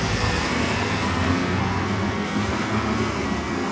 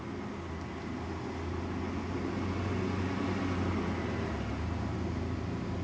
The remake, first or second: first